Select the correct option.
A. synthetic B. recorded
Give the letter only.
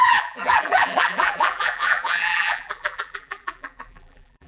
A